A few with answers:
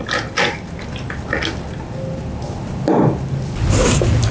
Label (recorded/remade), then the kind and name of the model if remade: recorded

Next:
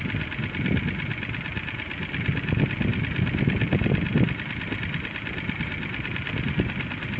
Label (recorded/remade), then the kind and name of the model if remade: recorded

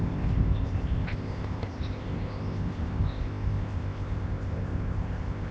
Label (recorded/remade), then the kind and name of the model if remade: remade, codec, ZipCodec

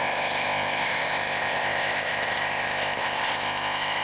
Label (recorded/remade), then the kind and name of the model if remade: remade, codec, ZipCodec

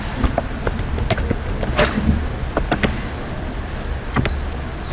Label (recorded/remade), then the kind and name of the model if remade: recorded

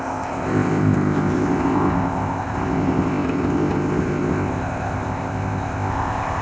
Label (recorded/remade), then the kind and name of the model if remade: remade, codec, ZipCodec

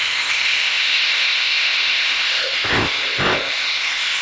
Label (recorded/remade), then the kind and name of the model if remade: remade, codec, ZipCodec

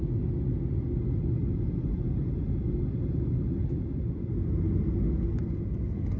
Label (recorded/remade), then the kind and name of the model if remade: recorded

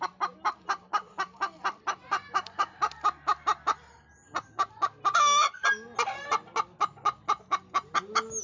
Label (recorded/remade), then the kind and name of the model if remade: recorded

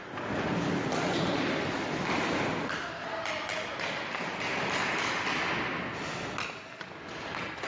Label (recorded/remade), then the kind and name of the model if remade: recorded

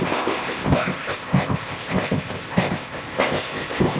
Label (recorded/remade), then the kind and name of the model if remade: remade, codec, ZipCodec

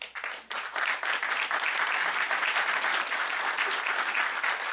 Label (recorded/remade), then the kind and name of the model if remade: recorded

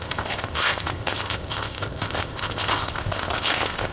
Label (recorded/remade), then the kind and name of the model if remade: remade, codec, ZipCodec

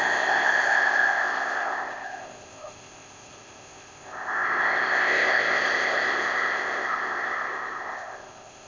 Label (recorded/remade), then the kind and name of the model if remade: remade, codec, ZipCodec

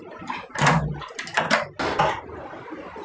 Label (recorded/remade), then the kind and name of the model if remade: recorded